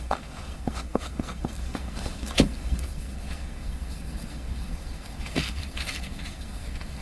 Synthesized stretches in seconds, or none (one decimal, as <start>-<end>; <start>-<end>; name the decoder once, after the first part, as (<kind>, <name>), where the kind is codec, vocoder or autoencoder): 0.0-7.0 (codec, SNAC)